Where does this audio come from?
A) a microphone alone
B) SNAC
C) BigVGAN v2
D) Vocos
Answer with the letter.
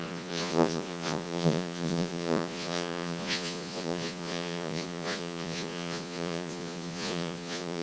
D